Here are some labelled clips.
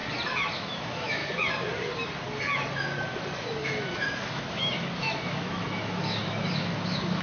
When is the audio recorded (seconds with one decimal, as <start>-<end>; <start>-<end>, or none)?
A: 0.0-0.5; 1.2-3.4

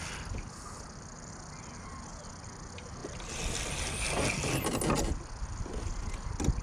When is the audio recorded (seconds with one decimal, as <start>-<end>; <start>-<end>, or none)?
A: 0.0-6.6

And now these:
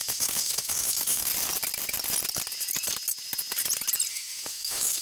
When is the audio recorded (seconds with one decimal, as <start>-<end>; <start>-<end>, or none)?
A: 1.3-4.1

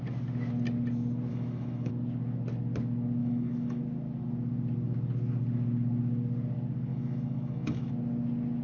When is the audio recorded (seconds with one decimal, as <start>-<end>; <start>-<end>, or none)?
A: 0.0-1.3; 1.9-3.2; 3.8-6.9; 7.9-8.6